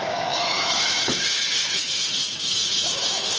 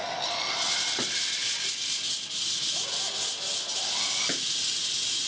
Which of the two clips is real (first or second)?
second